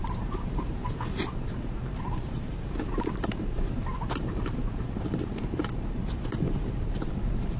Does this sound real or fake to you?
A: fake